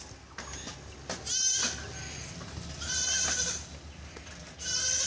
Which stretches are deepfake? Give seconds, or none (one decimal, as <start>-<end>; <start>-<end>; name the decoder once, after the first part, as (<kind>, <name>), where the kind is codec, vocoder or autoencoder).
none